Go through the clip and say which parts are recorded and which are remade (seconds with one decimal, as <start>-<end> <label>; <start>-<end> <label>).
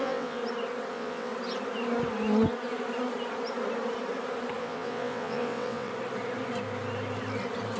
0.0-0.4 remade; 0.4-0.9 recorded; 0.9-1.3 remade; 1.3-4.6 recorded; 4.6-5.9 remade; 5.9-7.8 recorded